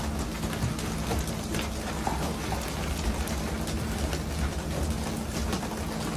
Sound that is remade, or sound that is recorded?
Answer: recorded